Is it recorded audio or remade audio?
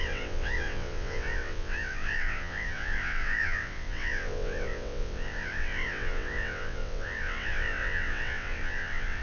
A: remade